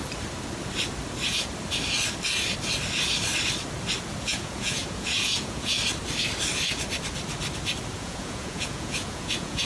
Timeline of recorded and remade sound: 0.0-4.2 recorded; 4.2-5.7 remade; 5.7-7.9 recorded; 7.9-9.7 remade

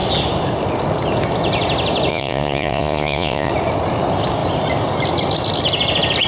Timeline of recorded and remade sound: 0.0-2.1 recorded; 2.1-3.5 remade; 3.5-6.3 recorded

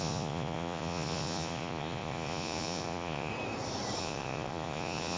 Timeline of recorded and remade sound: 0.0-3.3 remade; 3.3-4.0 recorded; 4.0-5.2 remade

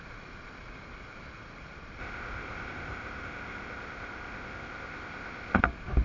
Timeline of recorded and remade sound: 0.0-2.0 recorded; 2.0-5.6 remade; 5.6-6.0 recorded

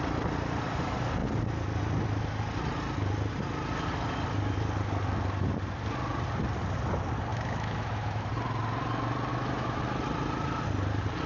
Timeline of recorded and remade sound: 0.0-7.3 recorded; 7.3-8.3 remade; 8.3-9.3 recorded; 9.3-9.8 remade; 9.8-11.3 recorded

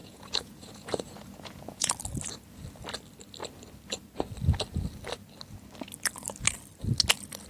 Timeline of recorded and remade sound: 0.0-1.9 remade; 1.9-7.5 recorded

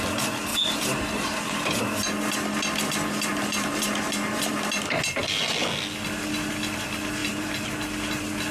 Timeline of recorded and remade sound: 0.0-0.5 recorded; 0.5-1.8 remade; 1.8-3.3 recorded; 3.3-4.5 remade; 4.5-7.2 recorded; 7.2-7.7 remade; 7.7-8.5 recorded

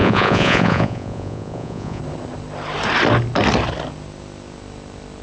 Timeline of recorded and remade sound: 0.0-2.0 remade; 2.0-5.2 recorded